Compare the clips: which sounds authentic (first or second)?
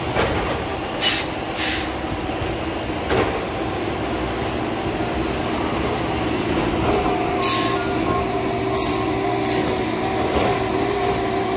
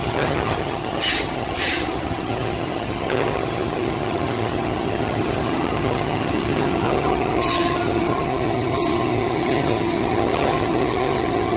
first